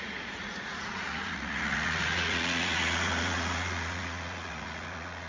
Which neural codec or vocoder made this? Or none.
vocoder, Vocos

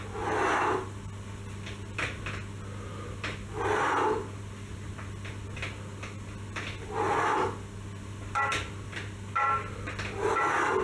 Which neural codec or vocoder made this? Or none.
none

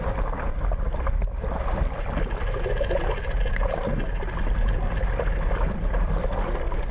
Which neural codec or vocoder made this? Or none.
none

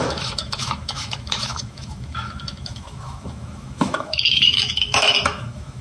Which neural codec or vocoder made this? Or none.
autoencoder, DAC-VAE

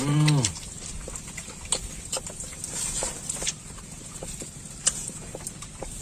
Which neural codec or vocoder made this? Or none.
none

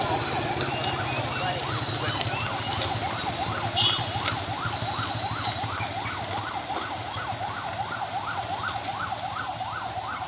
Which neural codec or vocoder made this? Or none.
none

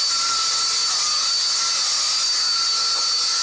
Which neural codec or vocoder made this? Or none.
none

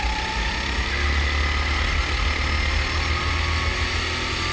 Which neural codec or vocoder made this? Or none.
none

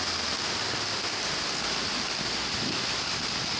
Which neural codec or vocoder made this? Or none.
none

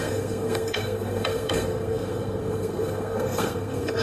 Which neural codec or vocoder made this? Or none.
codec, SNAC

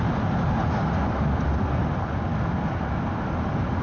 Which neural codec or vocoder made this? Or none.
none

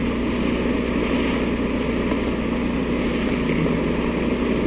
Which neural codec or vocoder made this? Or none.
none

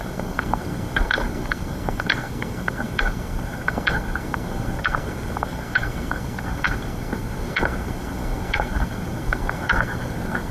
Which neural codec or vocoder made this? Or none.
codec, SNAC